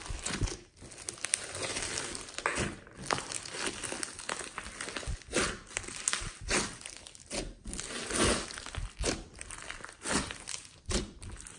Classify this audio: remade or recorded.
recorded